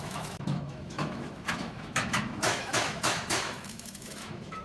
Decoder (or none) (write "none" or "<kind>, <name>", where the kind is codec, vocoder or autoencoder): autoencoder, DAC-VAE